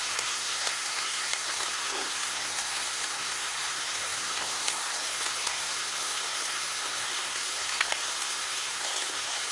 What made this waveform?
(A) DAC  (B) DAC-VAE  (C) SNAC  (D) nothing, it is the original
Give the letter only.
C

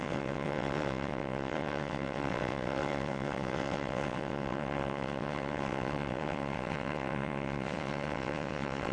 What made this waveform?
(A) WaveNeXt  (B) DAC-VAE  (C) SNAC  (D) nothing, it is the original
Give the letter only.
A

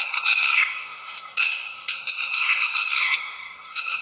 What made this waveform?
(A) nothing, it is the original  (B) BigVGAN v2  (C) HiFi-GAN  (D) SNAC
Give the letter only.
D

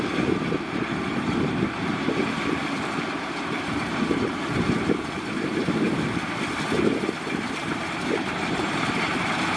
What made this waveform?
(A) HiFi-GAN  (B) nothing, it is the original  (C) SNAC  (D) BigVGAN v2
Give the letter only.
D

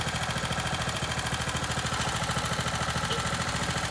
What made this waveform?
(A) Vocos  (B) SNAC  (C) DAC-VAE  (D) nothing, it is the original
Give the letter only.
D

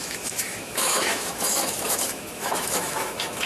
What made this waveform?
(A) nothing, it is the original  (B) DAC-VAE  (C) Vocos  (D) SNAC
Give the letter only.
B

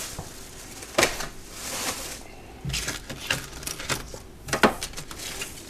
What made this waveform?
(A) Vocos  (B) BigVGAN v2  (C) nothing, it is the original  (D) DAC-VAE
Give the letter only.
C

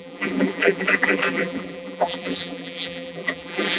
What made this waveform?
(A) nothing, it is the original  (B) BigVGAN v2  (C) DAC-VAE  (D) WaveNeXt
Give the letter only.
B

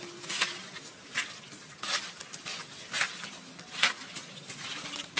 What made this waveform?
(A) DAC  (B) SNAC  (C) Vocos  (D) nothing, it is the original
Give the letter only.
D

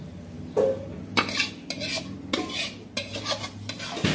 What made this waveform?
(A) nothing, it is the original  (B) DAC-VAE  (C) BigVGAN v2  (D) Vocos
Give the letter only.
A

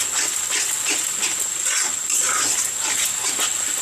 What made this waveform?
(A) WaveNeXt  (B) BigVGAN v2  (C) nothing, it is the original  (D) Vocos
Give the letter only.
C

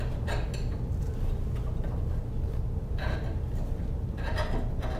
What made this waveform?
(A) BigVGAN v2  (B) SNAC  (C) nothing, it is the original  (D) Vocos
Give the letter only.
C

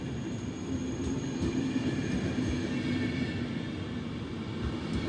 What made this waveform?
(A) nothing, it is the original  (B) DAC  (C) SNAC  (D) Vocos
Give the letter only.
A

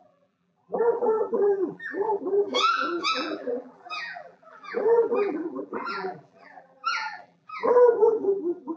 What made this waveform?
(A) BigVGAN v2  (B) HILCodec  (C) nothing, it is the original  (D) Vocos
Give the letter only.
A